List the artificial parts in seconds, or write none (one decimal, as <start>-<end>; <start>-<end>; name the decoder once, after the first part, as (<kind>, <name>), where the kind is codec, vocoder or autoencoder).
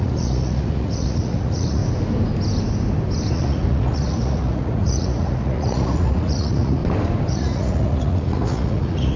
0.0-1.8 (vocoder, Vocos); 3.3-6.8; 7.3-9.2